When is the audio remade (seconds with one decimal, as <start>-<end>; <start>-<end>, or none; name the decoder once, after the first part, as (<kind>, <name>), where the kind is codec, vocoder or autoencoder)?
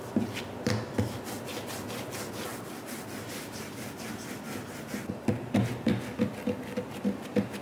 none